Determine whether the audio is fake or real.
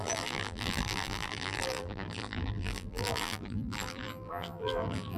fake